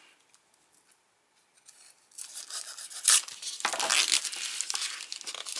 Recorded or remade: recorded